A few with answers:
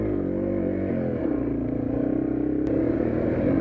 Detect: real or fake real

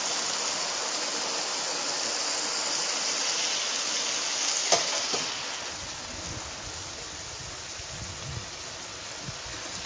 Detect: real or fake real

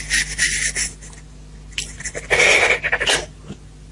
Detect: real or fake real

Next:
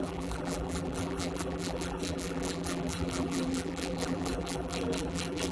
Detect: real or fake fake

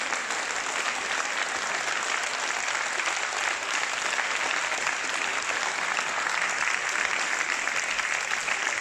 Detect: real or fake real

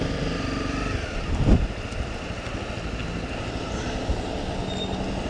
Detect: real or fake real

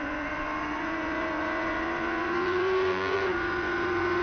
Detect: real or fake fake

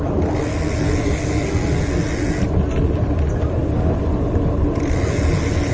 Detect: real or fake real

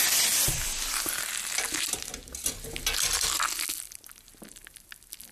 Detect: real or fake real